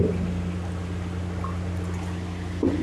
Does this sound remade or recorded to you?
recorded